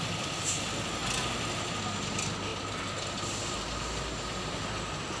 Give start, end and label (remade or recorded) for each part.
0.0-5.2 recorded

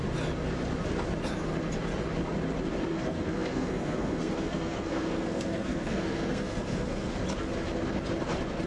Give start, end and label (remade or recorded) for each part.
0.0-2.9 recorded; 2.9-7.1 remade; 7.1-8.7 recorded

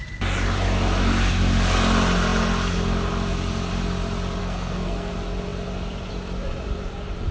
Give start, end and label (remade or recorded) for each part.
0.0-4.4 recorded; 4.4-5.1 remade; 5.1-7.3 recorded